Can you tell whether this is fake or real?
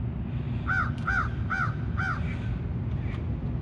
real